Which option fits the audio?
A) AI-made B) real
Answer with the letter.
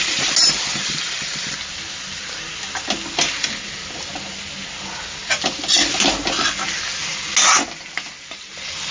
B